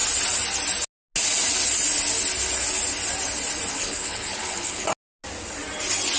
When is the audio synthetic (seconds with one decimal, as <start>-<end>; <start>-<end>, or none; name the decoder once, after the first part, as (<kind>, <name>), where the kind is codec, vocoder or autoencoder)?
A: 3.7-4.9 (codec, HILCodec)